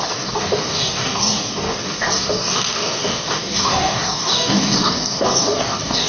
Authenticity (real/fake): fake